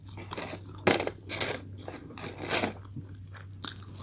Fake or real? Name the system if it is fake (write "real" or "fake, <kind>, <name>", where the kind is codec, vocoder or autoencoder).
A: real